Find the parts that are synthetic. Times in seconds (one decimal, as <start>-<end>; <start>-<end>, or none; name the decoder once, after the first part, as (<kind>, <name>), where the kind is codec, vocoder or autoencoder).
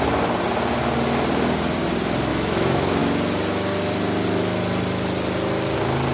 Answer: 2.3-3.0 (autoencoder, DAC-VAE)